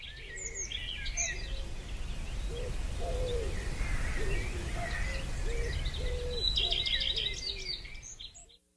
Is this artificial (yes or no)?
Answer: no